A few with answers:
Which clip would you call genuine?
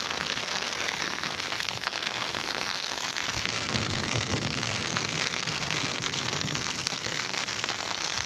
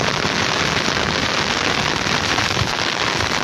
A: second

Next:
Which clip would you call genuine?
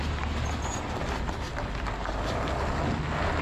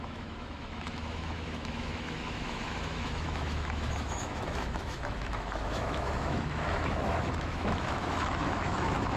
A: first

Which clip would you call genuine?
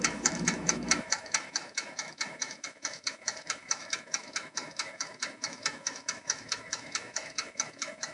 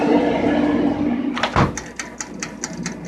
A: second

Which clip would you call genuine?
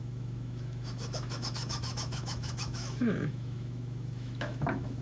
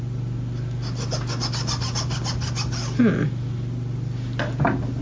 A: second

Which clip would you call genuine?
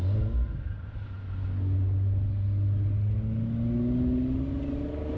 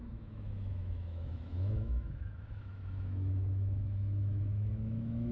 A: first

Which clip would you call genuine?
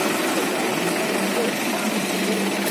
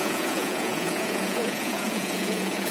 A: first